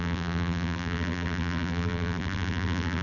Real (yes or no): no